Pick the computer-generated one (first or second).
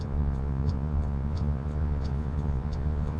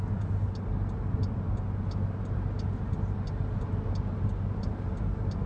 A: first